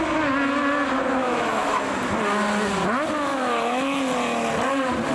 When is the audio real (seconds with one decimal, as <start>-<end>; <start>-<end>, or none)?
0.0-1.2; 2.0-3.3; 4.0-5.1